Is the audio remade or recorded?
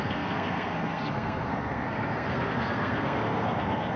remade